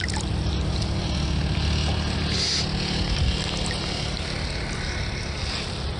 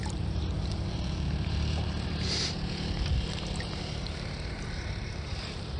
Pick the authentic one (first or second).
first